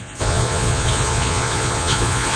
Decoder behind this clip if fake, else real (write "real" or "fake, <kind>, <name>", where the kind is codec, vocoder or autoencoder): fake, vocoder, Vocos